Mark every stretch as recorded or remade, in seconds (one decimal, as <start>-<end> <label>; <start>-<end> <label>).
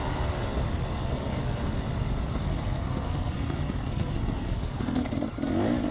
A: 0.0-0.8 recorded; 0.8-1.4 remade; 1.4-2.4 recorded; 2.4-5.1 remade; 5.1-5.9 recorded